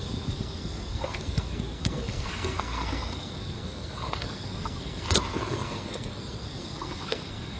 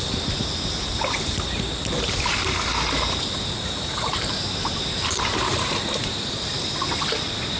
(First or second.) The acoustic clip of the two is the second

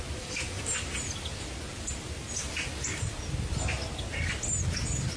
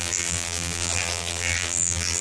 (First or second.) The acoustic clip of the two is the first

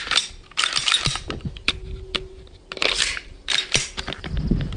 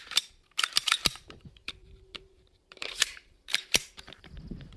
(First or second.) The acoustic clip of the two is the first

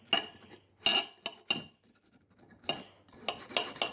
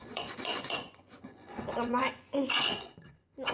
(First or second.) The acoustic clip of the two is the first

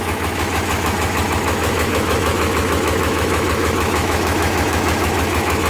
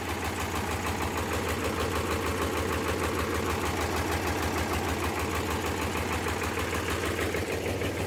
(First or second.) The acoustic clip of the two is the second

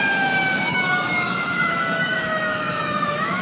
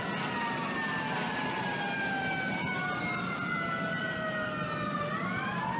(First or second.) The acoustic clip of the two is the second